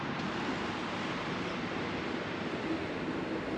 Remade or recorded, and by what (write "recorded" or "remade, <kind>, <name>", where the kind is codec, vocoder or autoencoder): remade, vocoder, BigVGAN v2